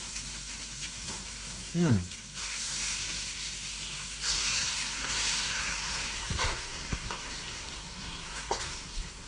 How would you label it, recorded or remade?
remade